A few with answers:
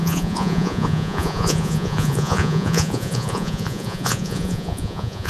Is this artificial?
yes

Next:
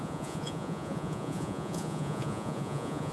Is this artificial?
yes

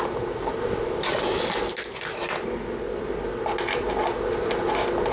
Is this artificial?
no